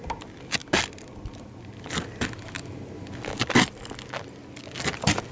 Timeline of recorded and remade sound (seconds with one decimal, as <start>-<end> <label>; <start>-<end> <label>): 0.0-5.3 recorded